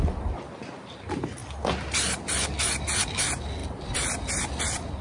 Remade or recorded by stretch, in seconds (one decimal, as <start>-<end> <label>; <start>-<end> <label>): 0.0-3.6 recorded; 3.6-5.0 remade